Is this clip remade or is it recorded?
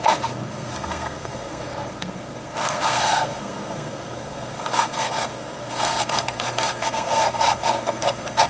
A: remade